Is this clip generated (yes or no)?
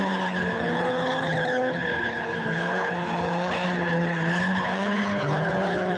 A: yes